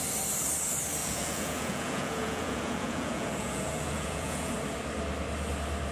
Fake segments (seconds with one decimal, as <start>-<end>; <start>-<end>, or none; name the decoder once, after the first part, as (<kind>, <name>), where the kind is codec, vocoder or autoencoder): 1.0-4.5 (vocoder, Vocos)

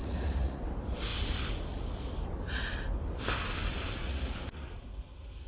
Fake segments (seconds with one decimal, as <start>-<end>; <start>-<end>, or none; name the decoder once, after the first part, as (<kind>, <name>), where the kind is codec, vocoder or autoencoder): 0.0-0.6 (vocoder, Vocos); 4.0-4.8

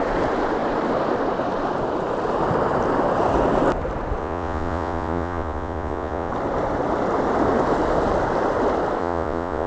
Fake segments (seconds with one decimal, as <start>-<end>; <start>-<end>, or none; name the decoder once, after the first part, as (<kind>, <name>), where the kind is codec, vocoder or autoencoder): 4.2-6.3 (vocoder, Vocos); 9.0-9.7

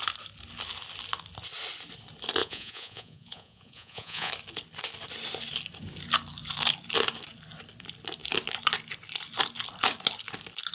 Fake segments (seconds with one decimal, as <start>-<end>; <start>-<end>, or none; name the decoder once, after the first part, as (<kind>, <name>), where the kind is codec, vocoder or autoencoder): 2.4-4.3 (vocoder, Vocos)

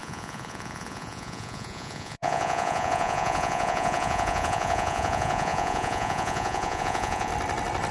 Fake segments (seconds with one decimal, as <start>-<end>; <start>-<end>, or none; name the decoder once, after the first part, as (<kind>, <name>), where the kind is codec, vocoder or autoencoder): 0.0-7.3 (vocoder, Vocos)

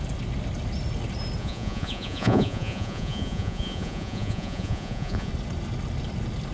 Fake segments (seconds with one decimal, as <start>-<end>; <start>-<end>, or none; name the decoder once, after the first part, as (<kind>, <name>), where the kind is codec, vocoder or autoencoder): 1.4-5.3 (vocoder, Vocos)

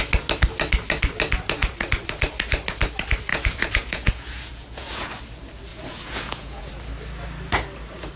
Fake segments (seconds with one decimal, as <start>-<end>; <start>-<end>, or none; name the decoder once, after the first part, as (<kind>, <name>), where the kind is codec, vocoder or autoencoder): 3.3-5.1 (vocoder, Vocos); 5.7-6.7